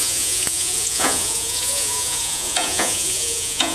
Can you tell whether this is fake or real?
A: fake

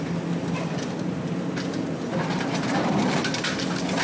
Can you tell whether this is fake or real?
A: real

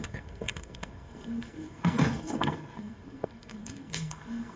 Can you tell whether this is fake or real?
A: fake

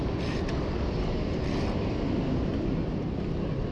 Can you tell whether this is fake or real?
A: fake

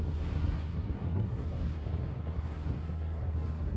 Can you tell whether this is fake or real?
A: fake